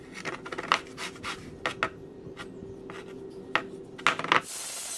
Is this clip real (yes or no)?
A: yes